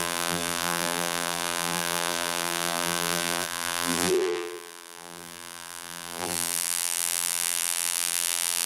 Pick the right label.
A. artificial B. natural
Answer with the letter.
A